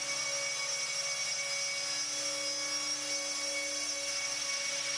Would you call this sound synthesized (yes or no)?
no